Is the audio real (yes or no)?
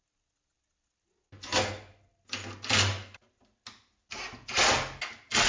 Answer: yes